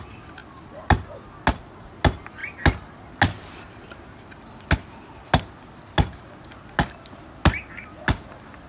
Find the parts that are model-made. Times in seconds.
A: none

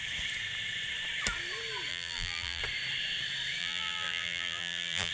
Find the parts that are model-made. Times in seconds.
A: 1.9-2.6 (vocoder, BigVGAN v2); 3.6-5.1

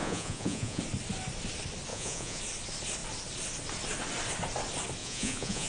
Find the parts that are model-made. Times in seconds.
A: 0.0-0.8 (vocoder, Vocos); 1.9-2.4; 5.0-5.7